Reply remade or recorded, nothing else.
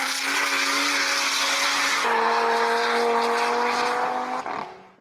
recorded